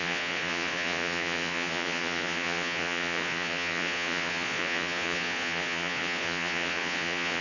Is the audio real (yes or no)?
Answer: no